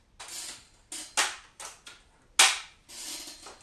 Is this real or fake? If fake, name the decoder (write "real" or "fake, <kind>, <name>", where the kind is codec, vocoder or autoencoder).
real